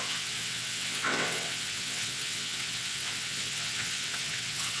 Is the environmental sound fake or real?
fake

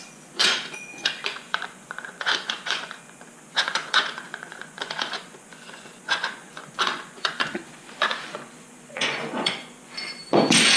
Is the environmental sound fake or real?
fake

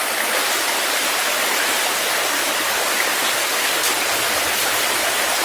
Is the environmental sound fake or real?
real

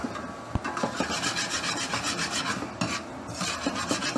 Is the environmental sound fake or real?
real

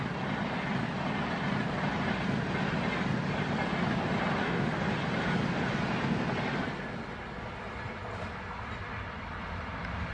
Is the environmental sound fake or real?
real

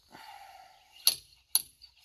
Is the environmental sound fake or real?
real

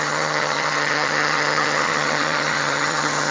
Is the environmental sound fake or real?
fake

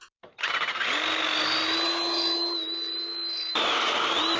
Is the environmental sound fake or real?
real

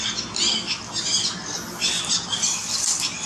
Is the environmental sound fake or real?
real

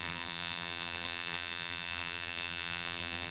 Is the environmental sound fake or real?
fake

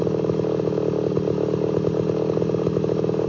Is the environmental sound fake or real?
real